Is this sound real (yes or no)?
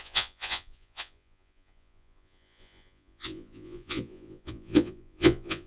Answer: no